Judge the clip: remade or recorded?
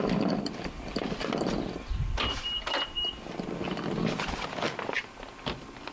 recorded